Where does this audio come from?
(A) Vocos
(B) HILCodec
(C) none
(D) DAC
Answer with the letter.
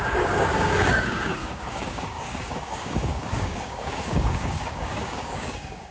D